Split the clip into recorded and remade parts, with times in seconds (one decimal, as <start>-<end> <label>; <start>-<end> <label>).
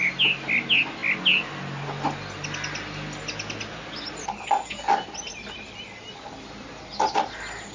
0.0-7.7 recorded